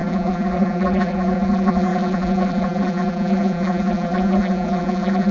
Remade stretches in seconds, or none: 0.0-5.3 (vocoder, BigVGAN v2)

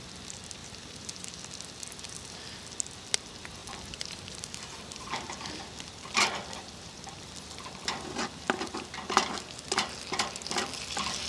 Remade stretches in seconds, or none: 0.6-1.4 (vocoder, BigVGAN v2); 3.6-5.6

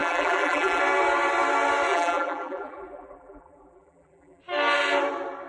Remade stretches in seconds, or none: 0.0-0.8 (vocoder, BigVGAN v2); 1.9-4.4

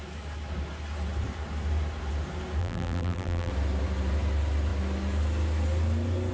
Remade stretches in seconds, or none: 2.6-3.5 (vocoder, BigVGAN v2)

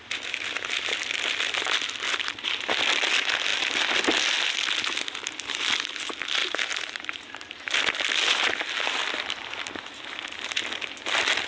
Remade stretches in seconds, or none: 6.4-7.7 (vocoder, BigVGAN v2)

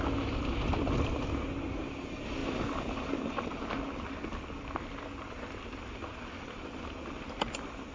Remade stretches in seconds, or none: none

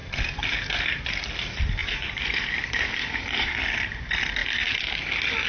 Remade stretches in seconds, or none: 1.8-3.7 (vocoder, BigVGAN v2)

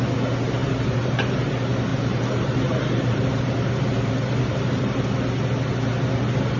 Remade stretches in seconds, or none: 0.6-1.5 (vocoder, BigVGAN v2); 1.9-4.9